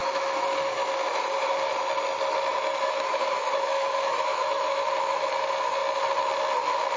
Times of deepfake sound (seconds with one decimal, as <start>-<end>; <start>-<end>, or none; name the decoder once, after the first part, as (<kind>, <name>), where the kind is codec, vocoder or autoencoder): 0.0-1.7 (autoencoder, DAC-VAE); 2.5-4.8